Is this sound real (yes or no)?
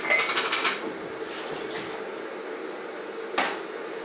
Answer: yes